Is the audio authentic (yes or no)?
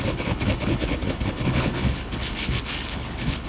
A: no